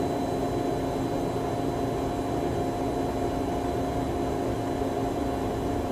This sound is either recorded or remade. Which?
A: recorded